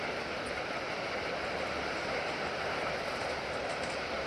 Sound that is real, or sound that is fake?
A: real